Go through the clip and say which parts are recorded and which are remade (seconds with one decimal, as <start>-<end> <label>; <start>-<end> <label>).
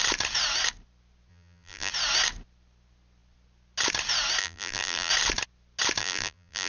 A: 0.0-1.3 recorded; 1.3-1.9 remade; 1.9-4.4 recorded; 4.4-5.1 remade; 5.1-6.0 recorded; 6.0-6.7 remade